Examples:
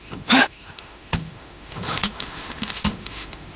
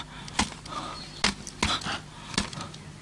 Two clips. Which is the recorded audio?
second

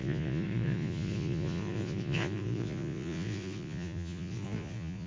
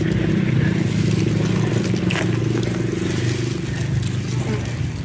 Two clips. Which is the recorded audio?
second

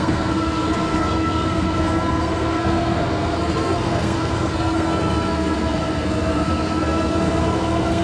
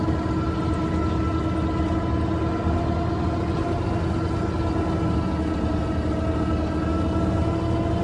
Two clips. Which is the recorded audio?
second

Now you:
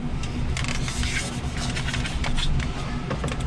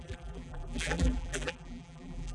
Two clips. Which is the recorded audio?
first